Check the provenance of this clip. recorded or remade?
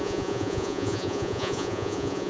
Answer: remade